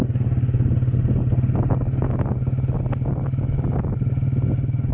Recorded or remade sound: recorded